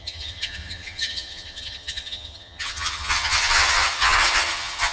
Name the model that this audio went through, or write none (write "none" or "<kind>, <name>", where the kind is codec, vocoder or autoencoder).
vocoder, HiFi-GAN